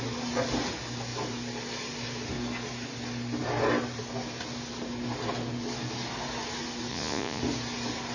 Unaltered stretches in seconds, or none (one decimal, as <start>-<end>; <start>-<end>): 0.0-6.9; 7.4-8.1